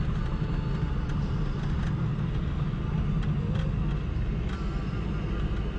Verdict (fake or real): real